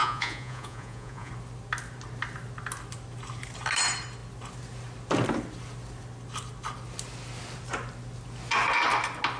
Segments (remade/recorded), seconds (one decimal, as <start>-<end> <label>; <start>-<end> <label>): 0.0-1.3 remade; 1.3-9.4 recorded